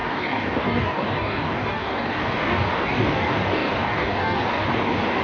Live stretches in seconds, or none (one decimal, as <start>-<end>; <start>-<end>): none